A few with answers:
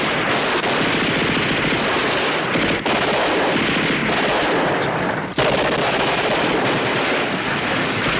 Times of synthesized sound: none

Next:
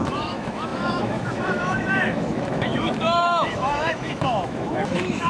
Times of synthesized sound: 0.0-5.3 (autoencoder, DAC-VAE)

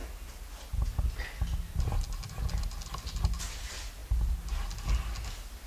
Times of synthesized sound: none